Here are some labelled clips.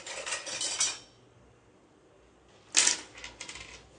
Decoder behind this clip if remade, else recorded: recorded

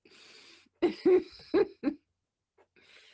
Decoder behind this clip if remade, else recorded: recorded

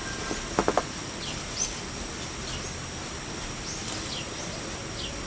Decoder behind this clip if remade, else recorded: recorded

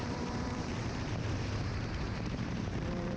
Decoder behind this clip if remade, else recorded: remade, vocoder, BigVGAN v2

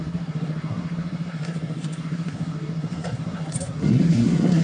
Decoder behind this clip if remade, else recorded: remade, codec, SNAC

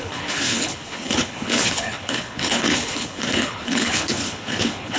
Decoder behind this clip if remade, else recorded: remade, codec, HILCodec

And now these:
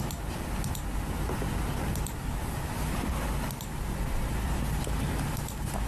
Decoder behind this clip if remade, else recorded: recorded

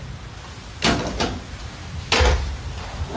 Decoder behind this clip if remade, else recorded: recorded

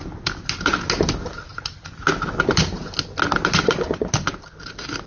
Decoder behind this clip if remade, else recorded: recorded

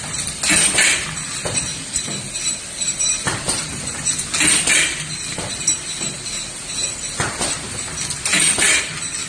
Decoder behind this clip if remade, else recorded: recorded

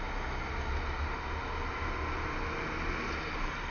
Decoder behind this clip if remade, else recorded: recorded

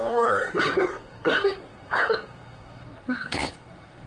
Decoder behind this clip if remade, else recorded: remade, codec, SNAC